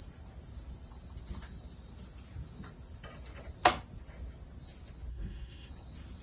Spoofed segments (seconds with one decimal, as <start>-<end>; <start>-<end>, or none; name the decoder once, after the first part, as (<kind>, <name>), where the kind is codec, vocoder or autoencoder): 5.1-5.7 (codec, SNAC)